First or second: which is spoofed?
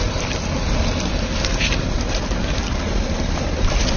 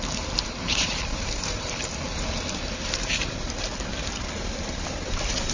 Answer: second